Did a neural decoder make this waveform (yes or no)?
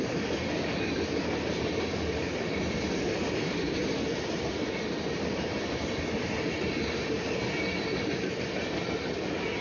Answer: yes